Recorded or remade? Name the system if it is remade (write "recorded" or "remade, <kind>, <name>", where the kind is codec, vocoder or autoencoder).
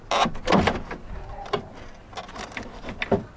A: recorded